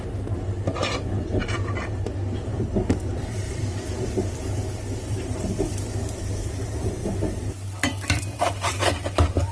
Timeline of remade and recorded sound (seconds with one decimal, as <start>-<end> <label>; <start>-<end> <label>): 0.0-9.5 remade

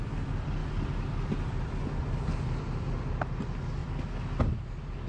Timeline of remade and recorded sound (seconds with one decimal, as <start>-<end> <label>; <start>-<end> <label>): 0.0-5.1 recorded